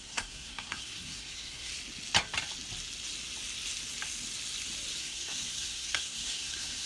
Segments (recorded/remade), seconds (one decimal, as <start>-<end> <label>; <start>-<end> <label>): 0.0-1.7 remade; 1.7-5.0 recorded; 5.0-6.9 remade